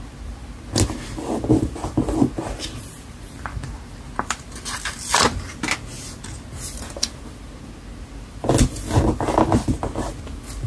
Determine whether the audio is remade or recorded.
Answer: recorded